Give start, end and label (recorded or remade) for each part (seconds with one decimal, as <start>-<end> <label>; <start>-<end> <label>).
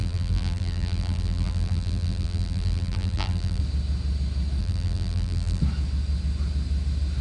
0.0-3.6 remade; 3.6-4.6 recorded; 4.6-5.6 remade; 5.6-7.2 recorded